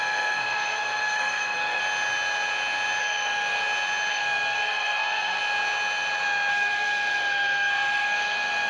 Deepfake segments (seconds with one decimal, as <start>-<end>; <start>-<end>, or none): 0.0-1.8; 3.0-3.6; 4.1-5.4; 6.5-8.7